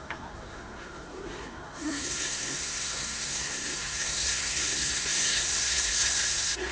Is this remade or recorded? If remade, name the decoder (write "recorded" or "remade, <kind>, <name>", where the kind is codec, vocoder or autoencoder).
remade, codec, SNAC